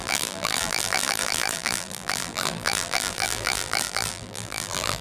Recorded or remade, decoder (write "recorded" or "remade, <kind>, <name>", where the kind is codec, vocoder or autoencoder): remade, vocoder, BigVGAN v2